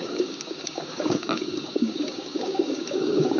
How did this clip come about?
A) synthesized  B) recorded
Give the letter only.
A